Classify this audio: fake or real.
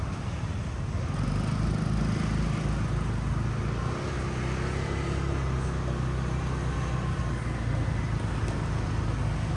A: real